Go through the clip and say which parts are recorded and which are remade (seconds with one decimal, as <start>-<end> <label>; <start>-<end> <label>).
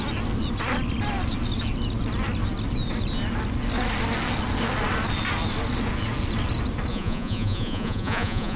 0.0-6.9 recorded; 6.9-8.6 remade